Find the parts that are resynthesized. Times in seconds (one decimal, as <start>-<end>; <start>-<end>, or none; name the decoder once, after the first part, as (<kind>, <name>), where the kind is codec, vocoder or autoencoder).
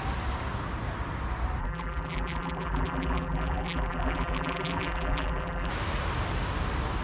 1.6-5.7 (vocoder, BigVGAN v2)